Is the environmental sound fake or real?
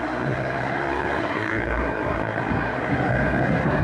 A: fake